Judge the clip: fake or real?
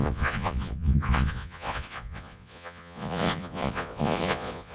fake